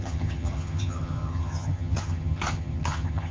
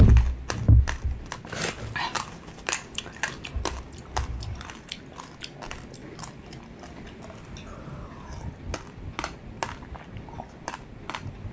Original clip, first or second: second